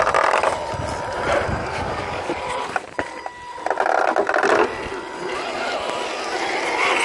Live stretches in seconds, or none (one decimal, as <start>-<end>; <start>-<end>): 0.0-1.6; 2.3-7.0